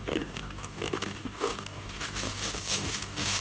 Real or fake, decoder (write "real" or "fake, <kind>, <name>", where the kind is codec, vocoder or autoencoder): fake, codec, DAC